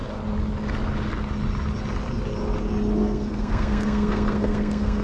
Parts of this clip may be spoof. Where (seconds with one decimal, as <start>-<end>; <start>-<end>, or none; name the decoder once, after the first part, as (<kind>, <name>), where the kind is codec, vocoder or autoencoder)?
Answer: 3.0-5.0 (codec, SNAC)